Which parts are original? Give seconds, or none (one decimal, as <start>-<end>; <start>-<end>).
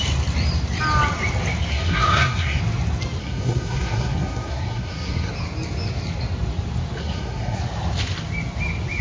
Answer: 0.0-1.7; 2.6-3.2; 5.3-7.0; 7.6-9.0